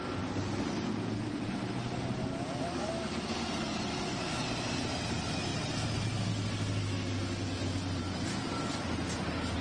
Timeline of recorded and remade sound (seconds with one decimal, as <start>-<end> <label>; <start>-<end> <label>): 0.0-9.6 recorded

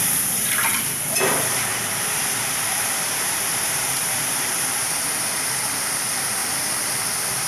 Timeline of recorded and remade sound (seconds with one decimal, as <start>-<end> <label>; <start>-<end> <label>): 0.0-6.4 remade; 6.4-7.5 recorded

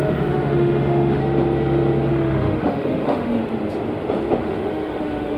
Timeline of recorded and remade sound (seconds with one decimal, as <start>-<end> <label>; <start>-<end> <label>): 0.0-1.2 remade; 1.2-2.1 recorded; 2.1-3.4 remade; 3.4-4.4 recorded; 4.4-5.4 remade